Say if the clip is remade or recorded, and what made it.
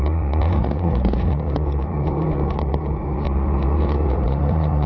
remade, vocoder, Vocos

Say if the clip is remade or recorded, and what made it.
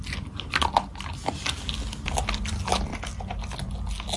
recorded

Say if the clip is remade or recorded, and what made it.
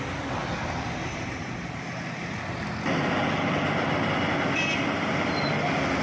recorded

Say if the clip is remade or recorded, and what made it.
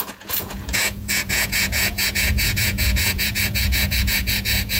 remade, vocoder, Vocos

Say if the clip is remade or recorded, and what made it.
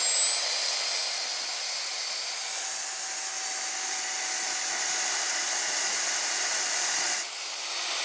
recorded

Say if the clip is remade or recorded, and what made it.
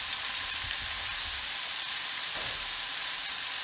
remade, vocoder, BigVGAN v2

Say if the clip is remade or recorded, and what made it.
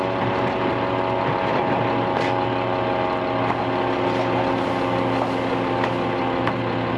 recorded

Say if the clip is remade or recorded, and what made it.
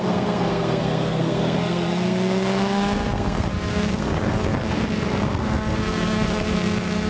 remade, codec, SNAC